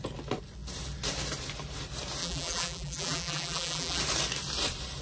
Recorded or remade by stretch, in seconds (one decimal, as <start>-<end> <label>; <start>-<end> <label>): 0.0-2.2 recorded; 2.2-4.0 remade; 4.0-5.0 recorded